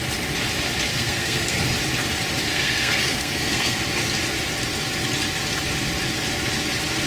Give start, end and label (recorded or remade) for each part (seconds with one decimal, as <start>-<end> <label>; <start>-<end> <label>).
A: 0.0-0.9 recorded; 0.9-1.6 remade; 1.6-2.5 recorded; 2.5-3.8 remade; 3.8-7.1 recorded